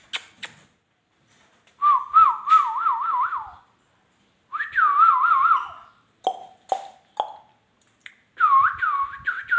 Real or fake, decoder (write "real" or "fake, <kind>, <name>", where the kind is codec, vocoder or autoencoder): real